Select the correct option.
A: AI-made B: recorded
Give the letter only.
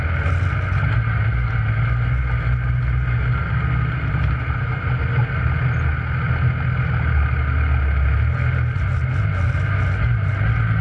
B